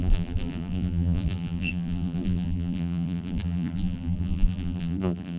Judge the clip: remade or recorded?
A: remade